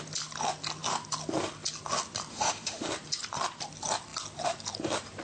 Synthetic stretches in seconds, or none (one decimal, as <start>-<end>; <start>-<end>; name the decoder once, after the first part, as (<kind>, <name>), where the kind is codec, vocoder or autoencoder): 2.3-2.9 (autoencoder, DAC-VAE)